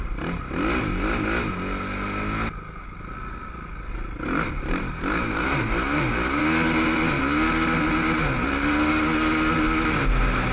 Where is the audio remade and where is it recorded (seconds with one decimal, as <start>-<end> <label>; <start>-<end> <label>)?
0.0-10.5 recorded